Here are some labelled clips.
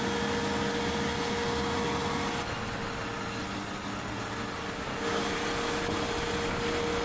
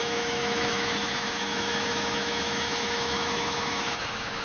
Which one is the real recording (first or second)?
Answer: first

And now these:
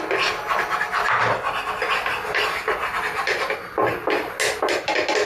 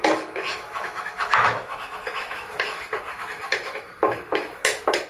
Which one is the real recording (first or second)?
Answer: first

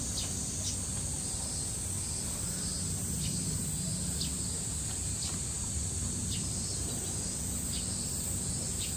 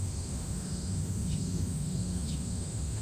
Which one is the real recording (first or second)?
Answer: first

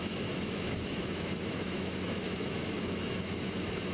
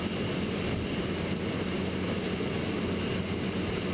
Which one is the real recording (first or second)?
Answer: second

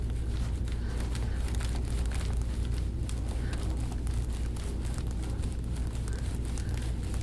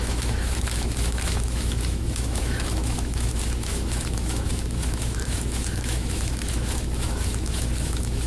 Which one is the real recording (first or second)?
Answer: first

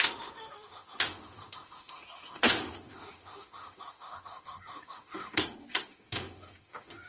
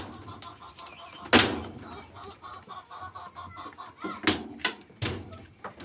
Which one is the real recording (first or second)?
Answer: second